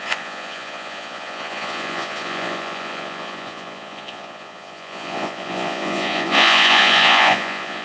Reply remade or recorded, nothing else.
remade